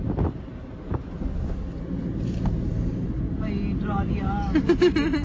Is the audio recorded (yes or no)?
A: yes